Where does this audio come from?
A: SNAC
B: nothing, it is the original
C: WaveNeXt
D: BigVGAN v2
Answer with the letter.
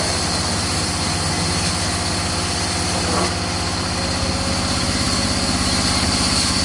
B